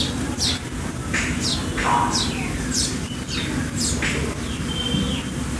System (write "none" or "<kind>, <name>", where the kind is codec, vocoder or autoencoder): none